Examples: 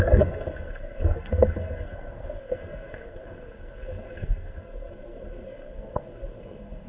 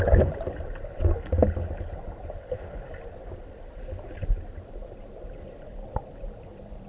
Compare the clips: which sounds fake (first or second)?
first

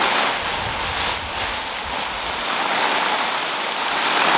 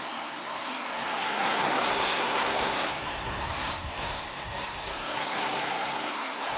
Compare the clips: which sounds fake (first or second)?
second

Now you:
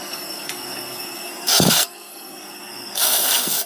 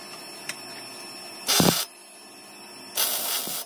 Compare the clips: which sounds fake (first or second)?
first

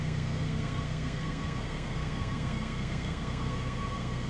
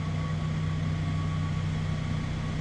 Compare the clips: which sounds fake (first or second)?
first